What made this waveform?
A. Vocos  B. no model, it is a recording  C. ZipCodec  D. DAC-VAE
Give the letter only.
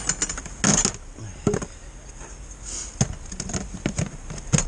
B